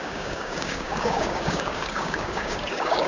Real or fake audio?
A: fake